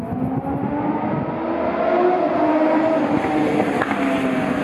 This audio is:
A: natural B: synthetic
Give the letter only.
A